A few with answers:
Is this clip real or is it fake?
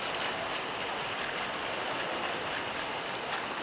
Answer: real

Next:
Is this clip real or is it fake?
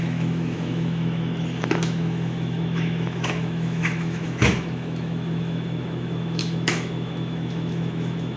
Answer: fake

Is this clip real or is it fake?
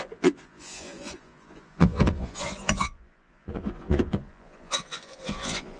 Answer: fake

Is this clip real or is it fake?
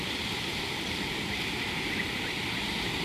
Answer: real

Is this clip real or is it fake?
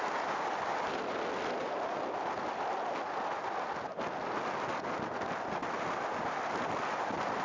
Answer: real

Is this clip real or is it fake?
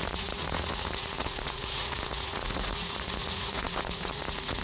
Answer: fake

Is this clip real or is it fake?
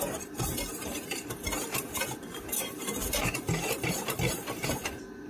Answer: fake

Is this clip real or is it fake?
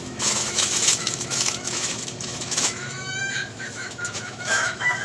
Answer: fake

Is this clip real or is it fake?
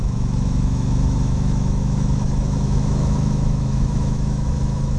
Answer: fake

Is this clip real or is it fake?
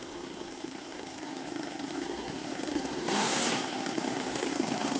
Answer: fake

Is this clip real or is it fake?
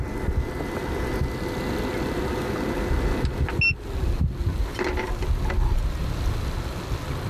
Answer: real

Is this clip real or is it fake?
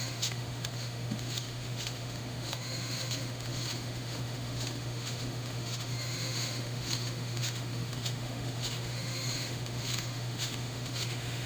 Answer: fake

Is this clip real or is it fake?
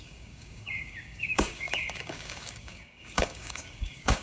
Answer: fake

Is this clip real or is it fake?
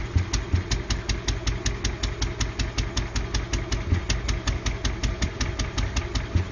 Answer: real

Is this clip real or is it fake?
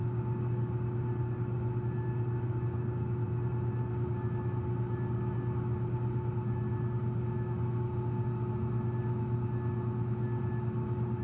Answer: real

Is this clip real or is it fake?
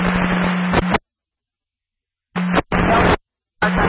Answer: real